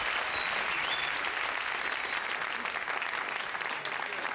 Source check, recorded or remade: recorded